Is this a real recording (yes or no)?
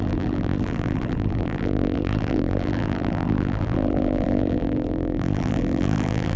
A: no